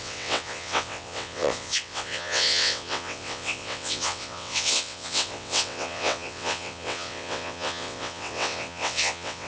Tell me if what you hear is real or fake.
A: fake